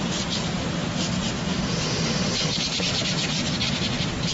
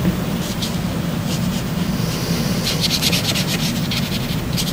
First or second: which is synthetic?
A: first